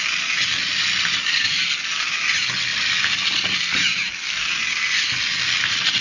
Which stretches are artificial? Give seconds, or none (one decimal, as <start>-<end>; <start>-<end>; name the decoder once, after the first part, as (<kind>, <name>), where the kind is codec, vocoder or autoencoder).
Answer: 0.5-1.2 (vocoder, BigVGAN v2); 2.7-4.1